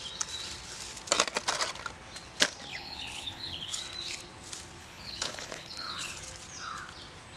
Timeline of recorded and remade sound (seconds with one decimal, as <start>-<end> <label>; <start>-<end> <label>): 0.0-2.7 recorded; 2.7-3.8 remade; 3.8-4.8 recorded; 4.8-6.2 remade; 6.2-7.4 recorded